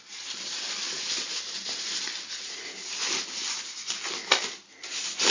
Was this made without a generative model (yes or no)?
yes